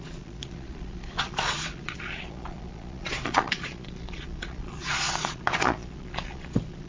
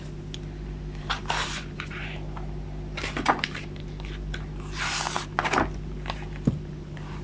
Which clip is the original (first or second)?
second